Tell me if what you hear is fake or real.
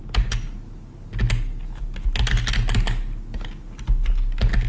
real